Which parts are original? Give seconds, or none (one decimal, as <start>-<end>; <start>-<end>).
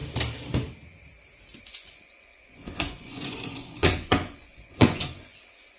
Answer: 0.0-1.6